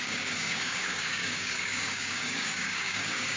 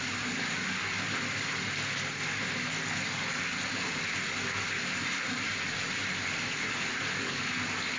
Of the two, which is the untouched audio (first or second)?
second